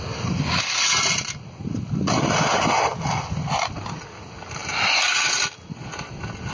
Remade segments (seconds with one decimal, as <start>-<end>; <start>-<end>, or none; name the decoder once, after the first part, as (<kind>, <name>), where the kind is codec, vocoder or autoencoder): none